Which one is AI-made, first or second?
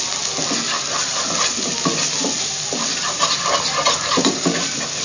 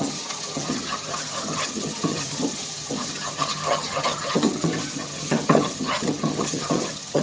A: second